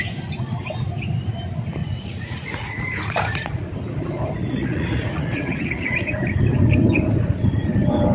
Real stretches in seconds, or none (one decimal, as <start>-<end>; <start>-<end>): 0.0-1.8; 3.5-4.4; 6.2-8.1